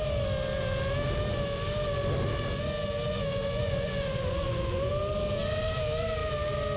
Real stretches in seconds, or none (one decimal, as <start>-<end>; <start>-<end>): 0.0-3.1; 4.9-6.8